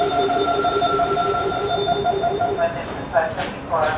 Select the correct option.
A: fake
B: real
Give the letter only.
A